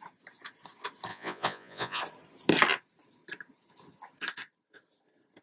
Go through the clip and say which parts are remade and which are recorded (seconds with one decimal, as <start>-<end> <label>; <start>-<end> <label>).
0.0-1.1 recorded; 1.1-2.0 remade; 2.0-5.4 recorded